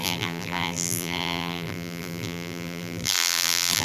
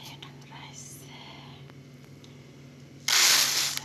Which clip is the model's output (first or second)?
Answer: first